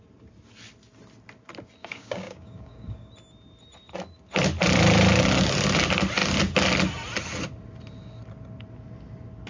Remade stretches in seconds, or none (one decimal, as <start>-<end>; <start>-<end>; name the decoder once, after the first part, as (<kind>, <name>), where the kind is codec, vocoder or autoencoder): 1.8-3.1 (codec, DAC)

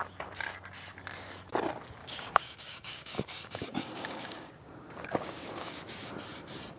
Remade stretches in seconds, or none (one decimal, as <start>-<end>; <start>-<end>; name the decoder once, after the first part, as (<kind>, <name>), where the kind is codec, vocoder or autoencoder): 2.0-6.1 (codec, DAC)

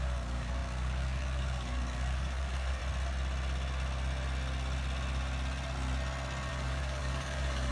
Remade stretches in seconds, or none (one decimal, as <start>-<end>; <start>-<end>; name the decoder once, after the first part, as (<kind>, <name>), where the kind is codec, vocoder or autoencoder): 0.0-2.8 (codec, DAC); 6.5-7.7

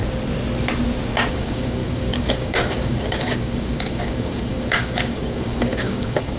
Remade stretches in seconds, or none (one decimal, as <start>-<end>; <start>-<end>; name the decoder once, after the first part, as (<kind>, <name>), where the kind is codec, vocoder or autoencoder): 1.3-6.4 (codec, DAC)

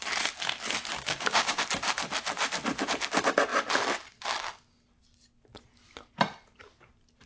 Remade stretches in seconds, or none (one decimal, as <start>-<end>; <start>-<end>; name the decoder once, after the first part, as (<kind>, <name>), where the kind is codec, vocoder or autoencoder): 0.9-1.6 (codec, DAC)

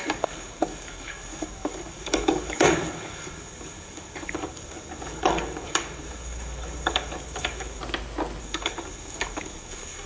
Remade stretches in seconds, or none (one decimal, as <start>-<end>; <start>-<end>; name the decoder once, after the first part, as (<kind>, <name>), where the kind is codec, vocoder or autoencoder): 0.0-7.8 (codec, DAC); 8.4-10.1

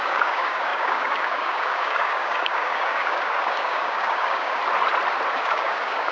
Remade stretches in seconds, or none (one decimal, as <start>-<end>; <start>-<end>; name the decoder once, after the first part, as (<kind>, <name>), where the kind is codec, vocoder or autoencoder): 0.0-4.6 (codec, DAC); 5.3-6.1